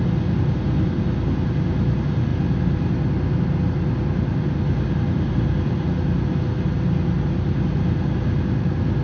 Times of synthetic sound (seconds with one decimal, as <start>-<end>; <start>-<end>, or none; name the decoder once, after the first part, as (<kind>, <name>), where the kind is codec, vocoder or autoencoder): none